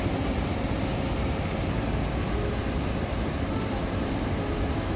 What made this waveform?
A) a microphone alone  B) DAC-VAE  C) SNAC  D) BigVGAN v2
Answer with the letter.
A